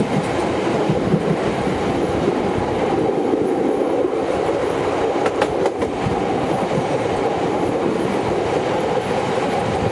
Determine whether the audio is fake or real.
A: real